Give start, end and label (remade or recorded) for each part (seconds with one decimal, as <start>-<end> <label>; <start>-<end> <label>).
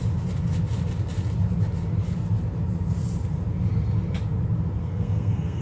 0.0-4.8 recorded; 4.8-5.6 remade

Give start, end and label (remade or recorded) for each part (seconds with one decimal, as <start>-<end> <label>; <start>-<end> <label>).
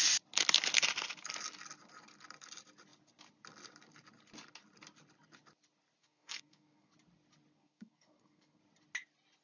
0.0-6.0 recorded; 6.0-6.9 remade; 6.9-7.5 recorded; 7.5-8.6 remade; 8.6-9.4 recorded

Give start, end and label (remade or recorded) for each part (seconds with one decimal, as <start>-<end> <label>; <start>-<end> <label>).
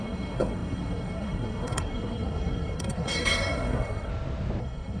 0.0-4.1 remade; 4.1-4.6 recorded; 4.6-5.0 remade